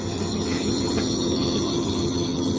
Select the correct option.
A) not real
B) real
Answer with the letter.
A